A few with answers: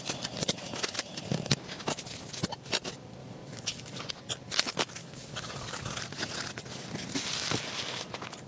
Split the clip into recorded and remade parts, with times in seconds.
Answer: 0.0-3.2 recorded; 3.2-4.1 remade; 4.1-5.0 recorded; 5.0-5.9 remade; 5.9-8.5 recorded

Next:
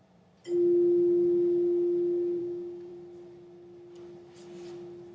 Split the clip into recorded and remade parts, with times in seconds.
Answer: 0.0-2.4 recorded; 2.4-2.9 remade; 2.9-5.1 recorded

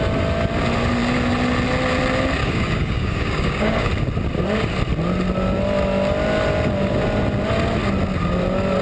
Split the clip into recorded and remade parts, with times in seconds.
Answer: 0.0-2.4 recorded; 2.4-3.9 remade; 3.9-8.8 recorded

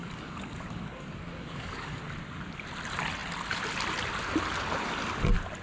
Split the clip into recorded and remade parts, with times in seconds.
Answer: 0.0-2.0 remade; 2.0-5.6 recorded